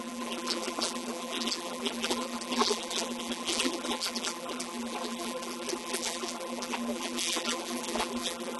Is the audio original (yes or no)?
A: no